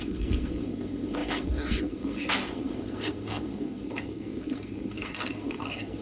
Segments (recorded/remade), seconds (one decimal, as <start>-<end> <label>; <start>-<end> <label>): 0.0-6.0 remade